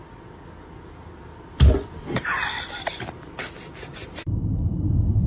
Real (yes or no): no